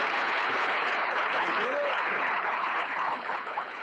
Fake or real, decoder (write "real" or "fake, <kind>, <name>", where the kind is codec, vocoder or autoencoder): fake, codec, HILCodec